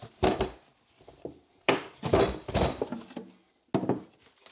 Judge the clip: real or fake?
real